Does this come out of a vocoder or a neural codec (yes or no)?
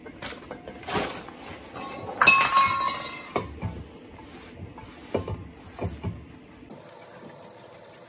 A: no